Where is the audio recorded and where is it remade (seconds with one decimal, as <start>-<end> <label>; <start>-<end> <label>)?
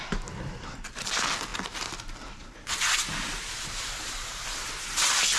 0.0-5.4 recorded